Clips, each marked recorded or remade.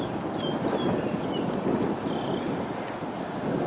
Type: recorded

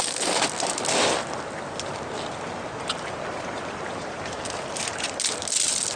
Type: recorded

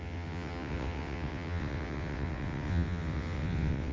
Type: remade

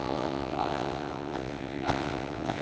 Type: remade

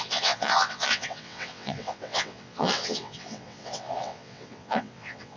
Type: remade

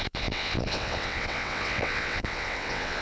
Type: remade